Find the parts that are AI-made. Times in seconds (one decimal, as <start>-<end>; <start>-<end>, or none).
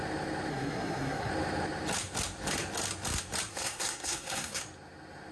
0.5-1.3; 3.5-4.6